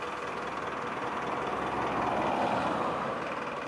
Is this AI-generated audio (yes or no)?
no